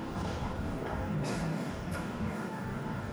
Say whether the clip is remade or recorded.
remade